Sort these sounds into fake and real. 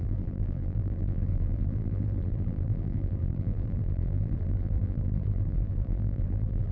fake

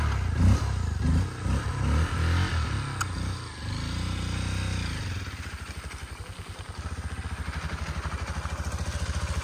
real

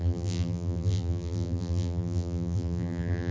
fake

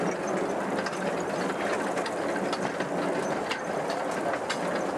real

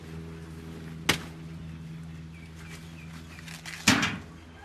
real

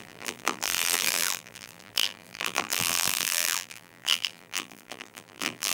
fake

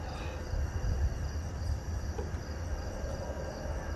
real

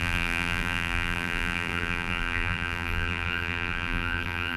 fake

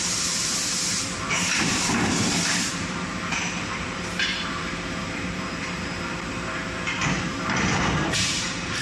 fake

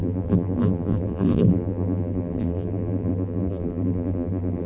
fake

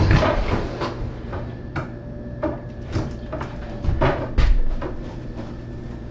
fake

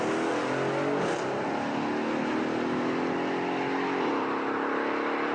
real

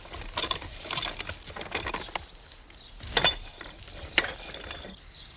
fake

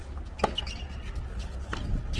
real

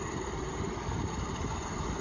fake